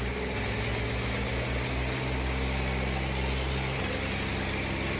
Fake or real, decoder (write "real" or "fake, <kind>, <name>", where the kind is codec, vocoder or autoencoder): real